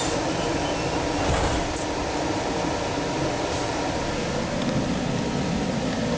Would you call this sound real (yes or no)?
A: yes